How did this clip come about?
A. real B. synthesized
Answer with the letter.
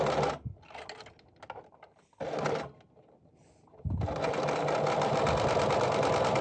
A